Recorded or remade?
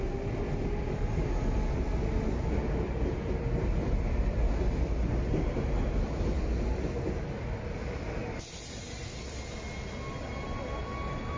recorded